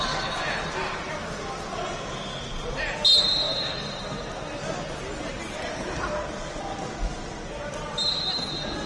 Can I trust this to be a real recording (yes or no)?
yes